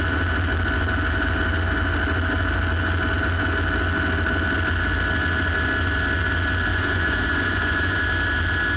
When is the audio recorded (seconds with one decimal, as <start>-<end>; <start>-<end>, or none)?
0.0-6.7; 8.0-8.8